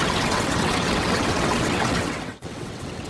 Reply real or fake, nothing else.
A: fake